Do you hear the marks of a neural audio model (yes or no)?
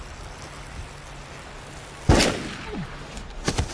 no